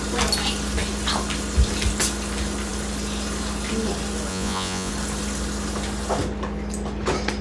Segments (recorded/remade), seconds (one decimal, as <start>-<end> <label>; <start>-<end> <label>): 0.0-4.3 recorded; 4.3-4.9 remade; 4.9-7.4 recorded